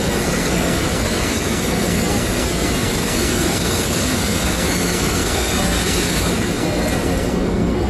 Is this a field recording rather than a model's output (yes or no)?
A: no